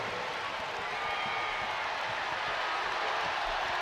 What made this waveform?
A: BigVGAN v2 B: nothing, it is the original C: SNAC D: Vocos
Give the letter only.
B